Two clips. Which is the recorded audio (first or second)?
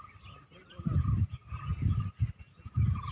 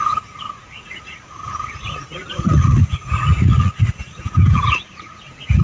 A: first